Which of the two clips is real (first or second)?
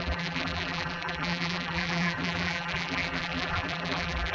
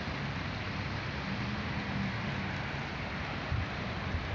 second